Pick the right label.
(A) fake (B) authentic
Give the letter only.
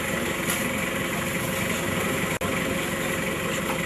B